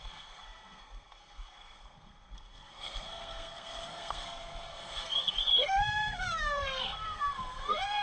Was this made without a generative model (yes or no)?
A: no